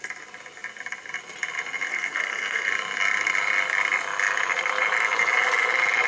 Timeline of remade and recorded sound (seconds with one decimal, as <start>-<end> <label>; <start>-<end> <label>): 0.0-1.9 recorded; 1.9-2.7 remade; 2.7-6.1 recorded